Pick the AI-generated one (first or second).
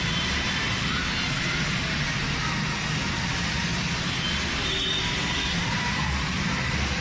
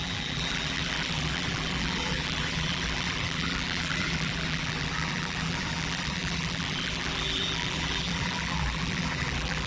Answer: second